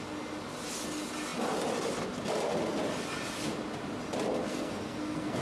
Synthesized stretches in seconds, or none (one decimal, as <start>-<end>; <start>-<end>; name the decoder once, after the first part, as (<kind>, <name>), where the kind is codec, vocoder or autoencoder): 4.5-5.4 (codec, SNAC)

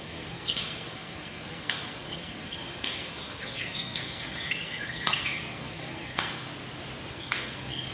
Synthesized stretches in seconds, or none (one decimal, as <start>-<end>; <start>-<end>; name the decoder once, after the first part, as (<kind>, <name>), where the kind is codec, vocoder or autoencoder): 0.0-6.5 (codec, SNAC); 7.1-7.9

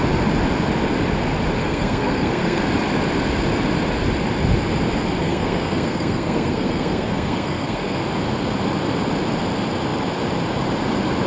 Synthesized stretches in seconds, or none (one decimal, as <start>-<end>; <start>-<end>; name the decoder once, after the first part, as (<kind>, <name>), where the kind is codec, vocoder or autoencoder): 1.6-2.6 (codec, SNAC); 5.2-8.0